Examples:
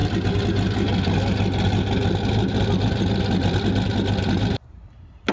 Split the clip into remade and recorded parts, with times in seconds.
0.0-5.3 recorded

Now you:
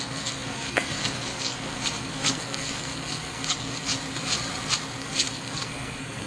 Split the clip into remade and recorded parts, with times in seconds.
0.0-3.9 remade; 3.9-5.0 recorded; 5.0-6.3 remade

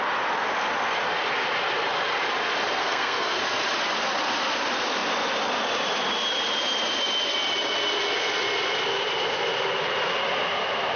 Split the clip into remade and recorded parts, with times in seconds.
0.0-2.8 recorded; 2.8-3.4 remade; 3.4-11.0 recorded